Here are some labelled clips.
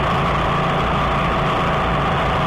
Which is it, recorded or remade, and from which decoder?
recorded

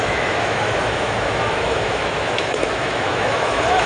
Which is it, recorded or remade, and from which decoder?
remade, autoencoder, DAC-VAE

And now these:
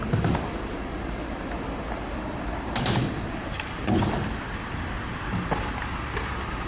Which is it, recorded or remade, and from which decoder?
recorded